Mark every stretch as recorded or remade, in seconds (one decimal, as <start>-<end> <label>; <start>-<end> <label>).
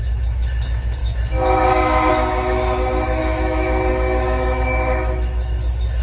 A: 0.0-6.0 remade